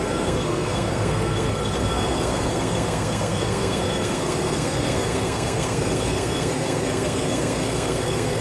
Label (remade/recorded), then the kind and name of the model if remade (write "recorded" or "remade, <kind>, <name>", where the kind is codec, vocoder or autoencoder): remade, codec, SNAC